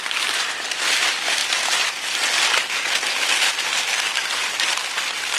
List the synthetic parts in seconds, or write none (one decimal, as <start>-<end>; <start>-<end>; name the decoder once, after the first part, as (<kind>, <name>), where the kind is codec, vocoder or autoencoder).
none